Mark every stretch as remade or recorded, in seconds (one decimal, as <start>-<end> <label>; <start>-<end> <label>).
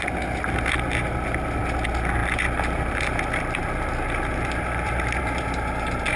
0.0-2.2 recorded; 2.2-5.8 remade; 5.8-6.2 recorded